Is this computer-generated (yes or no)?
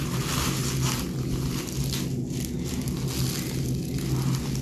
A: no